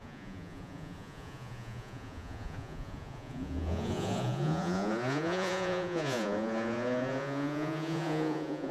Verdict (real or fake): fake